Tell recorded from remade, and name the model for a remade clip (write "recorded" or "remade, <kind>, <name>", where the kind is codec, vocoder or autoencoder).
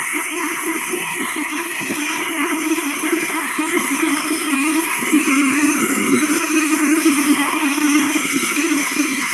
remade, codec, SNAC